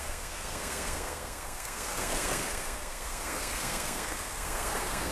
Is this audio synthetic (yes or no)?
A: yes